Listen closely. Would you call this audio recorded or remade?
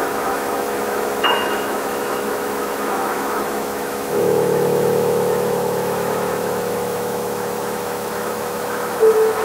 remade